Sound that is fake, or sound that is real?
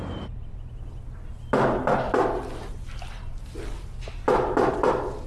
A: real